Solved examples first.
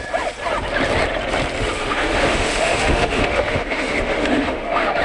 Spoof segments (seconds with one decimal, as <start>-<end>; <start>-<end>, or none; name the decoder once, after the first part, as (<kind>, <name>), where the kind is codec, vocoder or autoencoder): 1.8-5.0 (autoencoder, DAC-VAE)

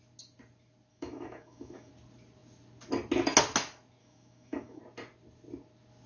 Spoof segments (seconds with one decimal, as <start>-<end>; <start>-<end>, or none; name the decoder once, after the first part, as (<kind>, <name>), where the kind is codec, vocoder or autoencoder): 0.9-1.9 (autoencoder, DAC-VAE); 4.0-4.8

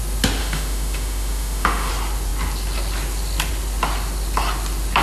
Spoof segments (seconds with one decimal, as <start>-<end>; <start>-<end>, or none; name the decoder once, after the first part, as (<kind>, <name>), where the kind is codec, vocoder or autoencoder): 0.4-1.9 (autoencoder, DAC-VAE)

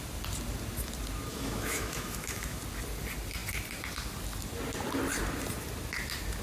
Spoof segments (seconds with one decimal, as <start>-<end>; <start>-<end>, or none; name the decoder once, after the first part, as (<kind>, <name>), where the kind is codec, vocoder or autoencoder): 1.3-2.6 (autoencoder, DAC-VAE)